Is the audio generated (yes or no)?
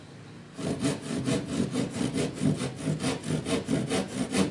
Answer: no